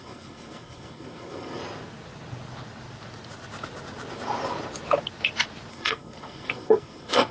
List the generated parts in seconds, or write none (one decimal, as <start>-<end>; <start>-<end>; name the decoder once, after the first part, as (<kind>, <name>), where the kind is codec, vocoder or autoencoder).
0.0-1.6 (codec, SNAC); 5.7-7.3